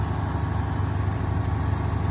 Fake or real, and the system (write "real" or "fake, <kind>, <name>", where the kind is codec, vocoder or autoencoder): real